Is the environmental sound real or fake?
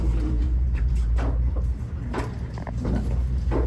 fake